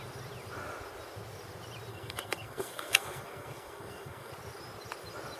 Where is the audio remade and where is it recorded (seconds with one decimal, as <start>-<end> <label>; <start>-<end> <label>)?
0.0-1.9 recorded; 1.9-4.3 remade; 4.3-5.4 recorded